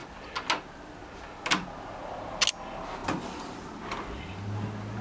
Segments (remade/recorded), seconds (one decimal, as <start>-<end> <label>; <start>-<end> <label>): 0.0-5.0 recorded